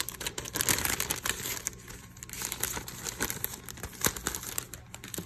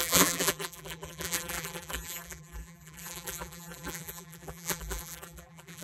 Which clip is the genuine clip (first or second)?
first